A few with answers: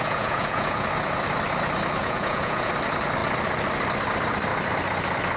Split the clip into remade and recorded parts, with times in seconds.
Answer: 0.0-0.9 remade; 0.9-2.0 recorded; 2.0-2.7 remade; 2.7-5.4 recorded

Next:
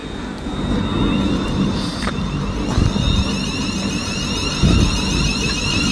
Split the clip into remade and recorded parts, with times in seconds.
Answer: 0.0-5.9 recorded